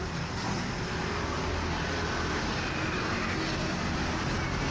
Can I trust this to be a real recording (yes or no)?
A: yes